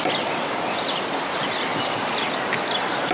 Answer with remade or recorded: recorded